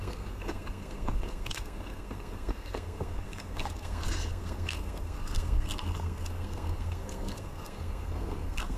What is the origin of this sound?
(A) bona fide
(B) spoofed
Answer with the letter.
B